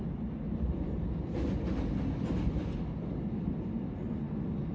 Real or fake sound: real